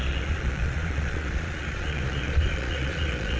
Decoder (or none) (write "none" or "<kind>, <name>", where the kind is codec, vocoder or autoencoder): vocoder, Vocos